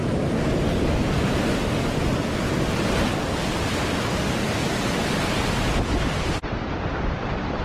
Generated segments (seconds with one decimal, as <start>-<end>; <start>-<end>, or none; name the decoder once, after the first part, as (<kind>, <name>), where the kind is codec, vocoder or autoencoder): 6.6-7.6 (vocoder, BigVGAN v2)